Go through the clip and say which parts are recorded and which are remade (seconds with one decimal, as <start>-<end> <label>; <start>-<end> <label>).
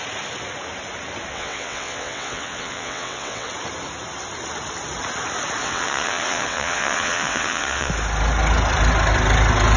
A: 0.0-1.3 recorded; 1.3-3.5 remade; 3.5-5.6 recorded; 5.6-7.9 remade; 7.9-9.8 recorded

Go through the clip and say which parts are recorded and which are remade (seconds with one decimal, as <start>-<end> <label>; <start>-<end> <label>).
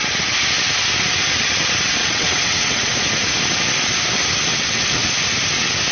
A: 0.0-2.0 recorded; 2.0-2.9 remade; 2.9-4.5 recorded; 4.5-5.1 remade; 5.1-5.9 recorded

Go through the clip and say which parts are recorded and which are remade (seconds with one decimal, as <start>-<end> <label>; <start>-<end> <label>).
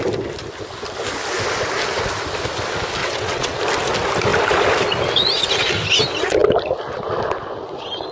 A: 0.0-3.0 recorded; 3.0-3.6 remade; 3.6-8.1 recorded